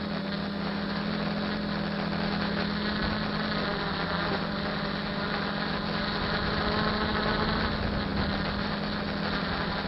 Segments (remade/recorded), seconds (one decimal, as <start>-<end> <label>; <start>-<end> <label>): 0.0-9.9 recorded